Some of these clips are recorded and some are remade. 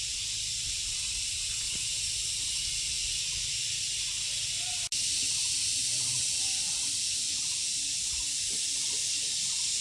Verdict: recorded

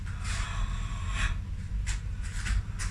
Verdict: recorded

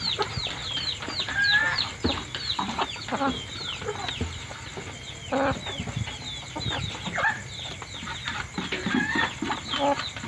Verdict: recorded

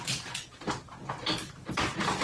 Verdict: recorded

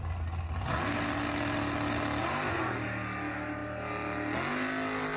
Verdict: recorded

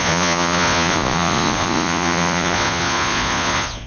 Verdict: remade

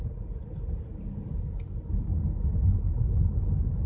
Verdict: recorded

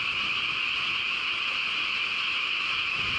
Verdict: recorded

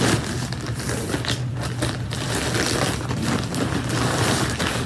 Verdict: recorded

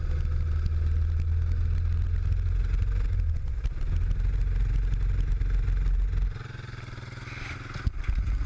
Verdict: recorded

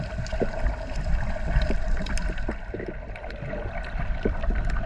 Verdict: remade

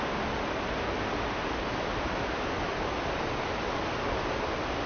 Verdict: recorded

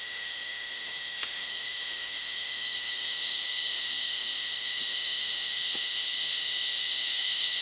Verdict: remade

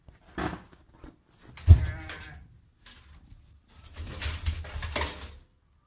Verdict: recorded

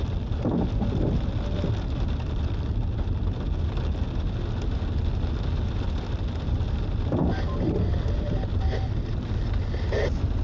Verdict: recorded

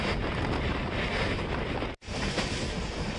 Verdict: recorded